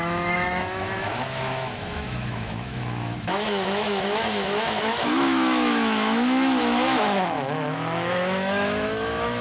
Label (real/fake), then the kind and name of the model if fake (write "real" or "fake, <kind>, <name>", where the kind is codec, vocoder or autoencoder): fake, autoencoder, DAC-VAE